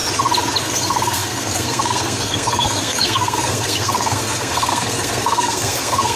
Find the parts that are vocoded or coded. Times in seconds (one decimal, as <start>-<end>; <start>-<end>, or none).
0.6-6.2